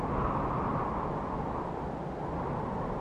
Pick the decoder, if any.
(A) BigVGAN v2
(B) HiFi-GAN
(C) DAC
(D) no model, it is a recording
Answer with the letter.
D